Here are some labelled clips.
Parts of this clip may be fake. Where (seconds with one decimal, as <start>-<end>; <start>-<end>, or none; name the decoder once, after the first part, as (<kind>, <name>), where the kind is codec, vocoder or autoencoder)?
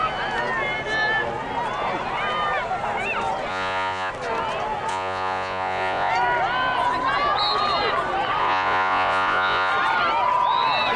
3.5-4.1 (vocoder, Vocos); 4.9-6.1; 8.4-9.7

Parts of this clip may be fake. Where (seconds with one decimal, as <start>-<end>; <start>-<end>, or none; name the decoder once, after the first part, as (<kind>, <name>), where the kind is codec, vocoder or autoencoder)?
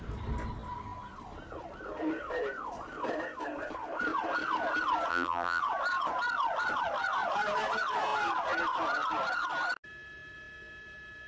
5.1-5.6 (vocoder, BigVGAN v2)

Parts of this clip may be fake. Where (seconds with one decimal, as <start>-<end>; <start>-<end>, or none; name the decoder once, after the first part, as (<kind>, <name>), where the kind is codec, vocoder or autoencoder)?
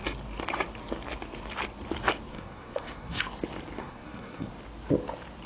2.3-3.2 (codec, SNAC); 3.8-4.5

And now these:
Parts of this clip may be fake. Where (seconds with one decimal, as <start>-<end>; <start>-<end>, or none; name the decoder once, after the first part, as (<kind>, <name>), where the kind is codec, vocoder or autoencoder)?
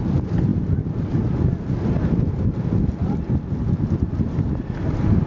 none